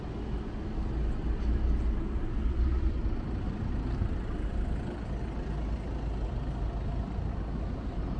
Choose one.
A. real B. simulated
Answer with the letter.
A